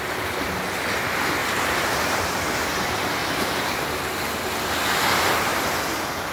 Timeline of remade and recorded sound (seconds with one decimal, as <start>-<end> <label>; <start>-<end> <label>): 0.0-1.4 recorded; 1.4-2.4 remade; 2.4-3.2 recorded; 3.2-4.2 remade; 4.2-6.3 recorded